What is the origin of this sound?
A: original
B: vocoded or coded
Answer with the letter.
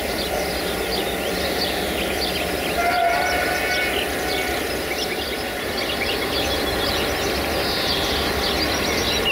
A